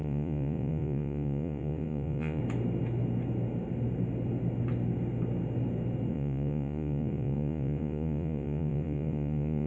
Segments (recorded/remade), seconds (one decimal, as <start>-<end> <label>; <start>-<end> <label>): 0.0-2.4 remade; 2.4-6.1 recorded; 6.1-9.7 remade